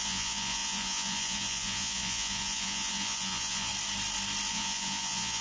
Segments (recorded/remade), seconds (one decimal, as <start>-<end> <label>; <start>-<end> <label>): 0.0-3.7 remade; 3.7-4.5 recorded; 4.5-5.4 remade